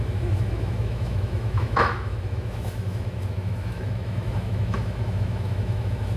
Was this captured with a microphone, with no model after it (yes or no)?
no